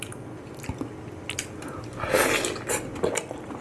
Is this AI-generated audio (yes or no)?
no